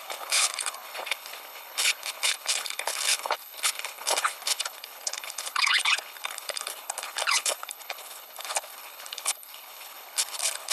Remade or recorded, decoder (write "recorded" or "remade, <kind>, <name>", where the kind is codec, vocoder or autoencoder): remade, codec, HILCodec